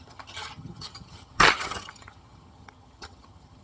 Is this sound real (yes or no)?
no